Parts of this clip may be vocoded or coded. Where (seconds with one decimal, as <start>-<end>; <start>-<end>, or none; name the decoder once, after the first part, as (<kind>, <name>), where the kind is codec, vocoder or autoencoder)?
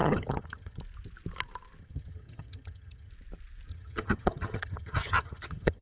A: 0.0-0.8 (vocoder, HiFi-GAN); 1.8-3.1; 3.7-5.8